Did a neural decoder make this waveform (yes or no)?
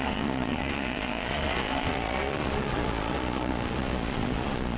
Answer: yes